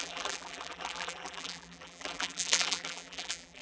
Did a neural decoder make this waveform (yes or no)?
yes